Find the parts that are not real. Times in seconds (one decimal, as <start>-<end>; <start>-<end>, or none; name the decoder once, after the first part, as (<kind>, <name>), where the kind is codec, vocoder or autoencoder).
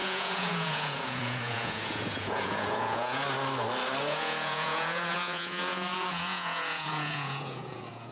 0.0-3.2 (vocoder, Vocos); 4.0-8.1